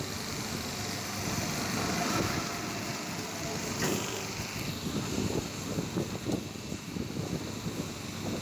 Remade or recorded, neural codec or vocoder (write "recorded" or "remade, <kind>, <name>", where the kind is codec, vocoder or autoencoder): recorded